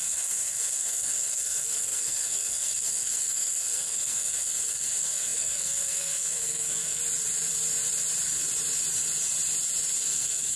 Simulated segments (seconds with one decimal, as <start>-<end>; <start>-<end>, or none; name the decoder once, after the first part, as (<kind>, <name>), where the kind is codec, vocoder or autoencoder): 0.0-7.0 (codec, SNAC); 10.0-10.6